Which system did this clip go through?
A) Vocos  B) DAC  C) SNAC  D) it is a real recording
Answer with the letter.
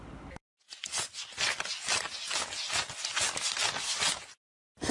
D